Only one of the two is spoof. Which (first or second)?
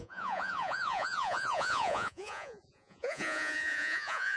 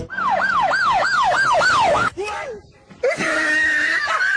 first